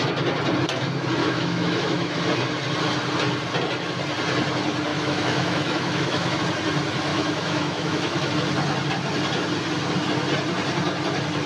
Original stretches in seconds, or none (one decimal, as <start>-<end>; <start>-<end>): 0.0-1.2; 2.2-4.9; 6.4-7.1; 8.3-11.5